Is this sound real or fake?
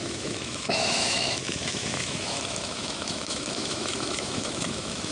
fake